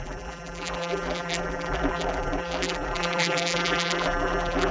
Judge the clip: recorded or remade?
remade